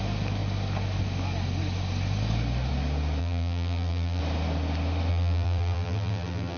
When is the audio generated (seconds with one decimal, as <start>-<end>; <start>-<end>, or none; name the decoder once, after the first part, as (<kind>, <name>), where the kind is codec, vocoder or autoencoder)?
3.2-4.2 (vocoder, BigVGAN v2); 5.1-6.6